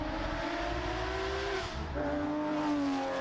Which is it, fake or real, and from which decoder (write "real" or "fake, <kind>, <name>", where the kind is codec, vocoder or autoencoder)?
real